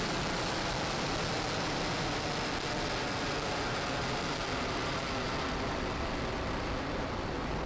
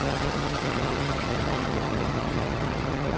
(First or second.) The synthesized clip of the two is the second